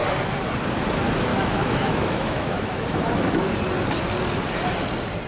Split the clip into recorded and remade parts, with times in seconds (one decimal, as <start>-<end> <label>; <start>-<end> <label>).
0.0-1.3 recorded; 1.3-3.5 remade; 3.5-5.3 recorded